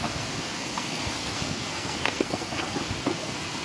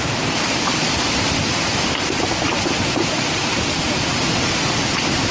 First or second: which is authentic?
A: second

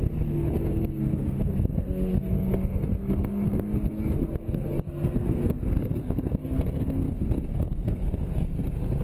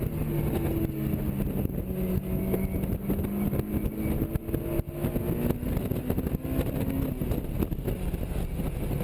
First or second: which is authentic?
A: second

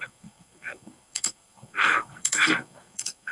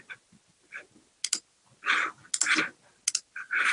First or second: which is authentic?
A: second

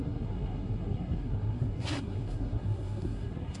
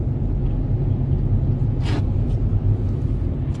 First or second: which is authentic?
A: second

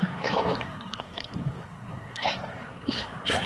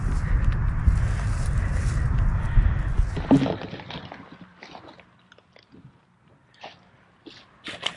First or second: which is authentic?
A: second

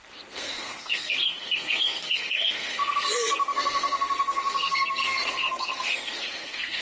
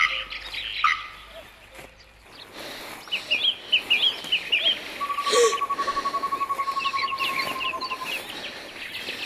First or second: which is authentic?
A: second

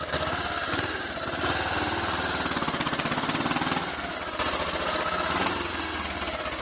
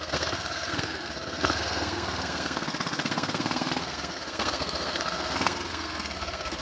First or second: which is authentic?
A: first